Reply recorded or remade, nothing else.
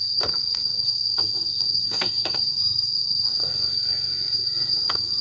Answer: remade